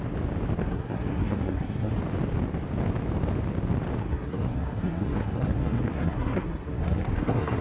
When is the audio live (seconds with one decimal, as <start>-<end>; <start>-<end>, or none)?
0.0-0.6; 1.9-4.0